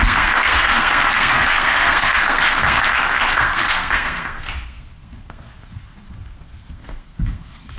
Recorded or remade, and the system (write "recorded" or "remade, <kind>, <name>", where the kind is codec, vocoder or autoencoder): remade, codec, SNAC